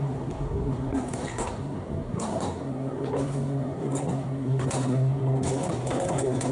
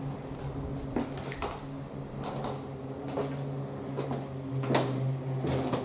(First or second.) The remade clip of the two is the first